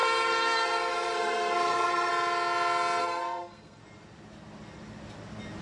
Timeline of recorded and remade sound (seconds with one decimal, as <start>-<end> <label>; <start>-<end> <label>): 0.0-2.1 remade; 2.1-3.0 recorded; 3.0-3.8 remade; 3.8-5.6 recorded